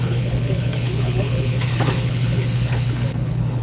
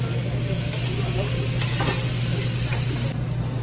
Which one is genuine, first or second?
second